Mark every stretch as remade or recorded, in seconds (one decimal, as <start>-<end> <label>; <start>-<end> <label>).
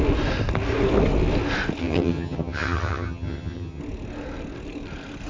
0.0-1.8 recorded; 1.8-3.8 remade; 3.8-5.3 recorded